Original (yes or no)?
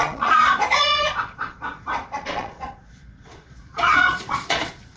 no